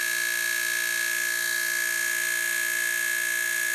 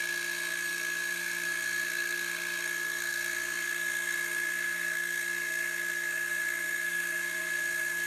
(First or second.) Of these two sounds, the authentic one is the first